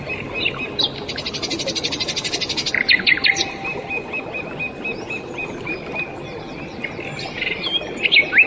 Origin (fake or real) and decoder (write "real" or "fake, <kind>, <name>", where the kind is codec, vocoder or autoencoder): real